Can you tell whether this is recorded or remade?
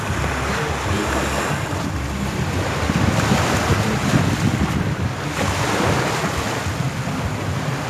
recorded